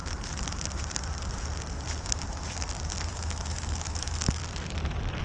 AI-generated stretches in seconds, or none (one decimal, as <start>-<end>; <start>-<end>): 3.1-4.4